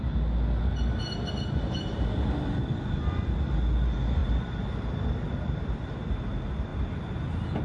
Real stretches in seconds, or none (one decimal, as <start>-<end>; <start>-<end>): 0.0-7.6